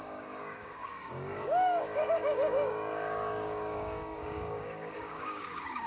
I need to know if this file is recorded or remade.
remade